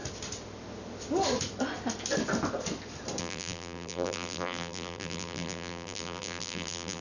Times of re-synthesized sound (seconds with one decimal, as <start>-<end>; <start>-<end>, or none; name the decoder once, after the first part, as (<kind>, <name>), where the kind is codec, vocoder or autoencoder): 3.2-7.0 (vocoder, BigVGAN v2)